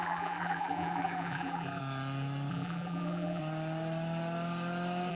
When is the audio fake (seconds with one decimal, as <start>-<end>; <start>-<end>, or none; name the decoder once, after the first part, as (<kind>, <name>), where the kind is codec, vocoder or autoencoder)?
0.0-1.8 (vocoder, BigVGAN v2); 2.5-3.4